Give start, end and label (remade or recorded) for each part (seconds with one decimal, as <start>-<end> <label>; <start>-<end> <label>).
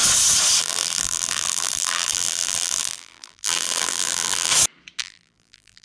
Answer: 0.0-0.6 recorded; 0.6-4.5 remade; 4.5-5.0 recorded; 5.0-5.8 remade